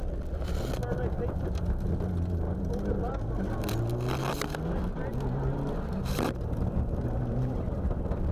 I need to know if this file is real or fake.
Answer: real